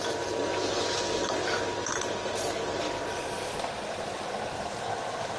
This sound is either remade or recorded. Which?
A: recorded